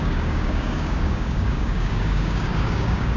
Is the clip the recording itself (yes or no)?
no